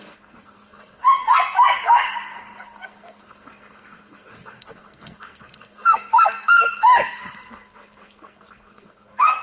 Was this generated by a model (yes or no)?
yes